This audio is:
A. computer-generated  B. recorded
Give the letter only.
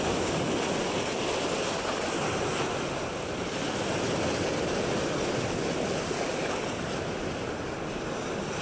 B